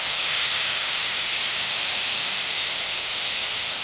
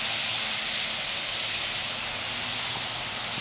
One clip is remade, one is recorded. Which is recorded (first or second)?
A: second